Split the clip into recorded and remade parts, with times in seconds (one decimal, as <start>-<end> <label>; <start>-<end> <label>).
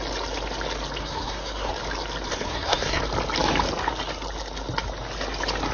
0.0-1.0 recorded; 1.0-1.7 remade; 1.7-2.3 recorded; 2.3-3.0 remade; 3.0-5.7 recorded